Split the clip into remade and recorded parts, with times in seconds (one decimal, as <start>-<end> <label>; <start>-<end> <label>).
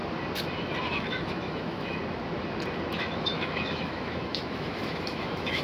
0.0-0.9 recorded; 0.9-2.0 remade; 2.0-2.9 recorded; 2.9-5.6 remade